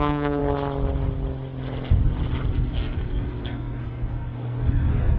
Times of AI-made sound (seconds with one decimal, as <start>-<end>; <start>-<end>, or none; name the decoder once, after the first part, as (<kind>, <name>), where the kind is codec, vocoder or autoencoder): 0.0-0.4 (codec, SNAC); 2.5-5.2